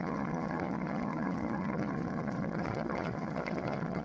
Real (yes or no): no